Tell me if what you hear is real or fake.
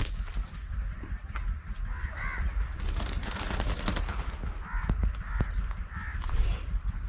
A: real